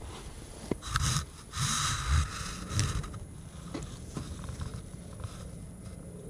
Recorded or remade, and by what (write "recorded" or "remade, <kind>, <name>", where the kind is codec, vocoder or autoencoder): recorded